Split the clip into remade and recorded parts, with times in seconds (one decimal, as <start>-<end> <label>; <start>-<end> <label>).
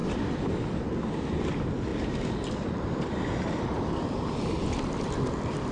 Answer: 0.0-5.7 recorded